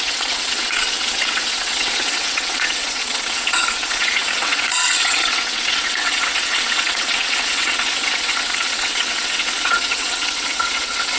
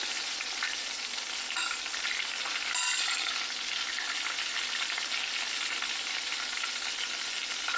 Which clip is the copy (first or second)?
first